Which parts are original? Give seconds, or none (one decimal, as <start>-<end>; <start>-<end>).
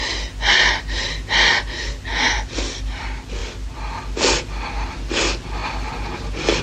0.0-6.6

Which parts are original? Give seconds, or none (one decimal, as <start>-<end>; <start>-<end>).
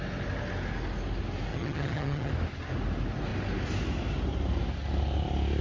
0.0-1.5; 2.3-5.6